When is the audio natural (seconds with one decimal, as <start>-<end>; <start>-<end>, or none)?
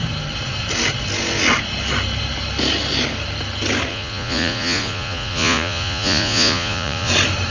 0.0-3.9; 7.1-7.5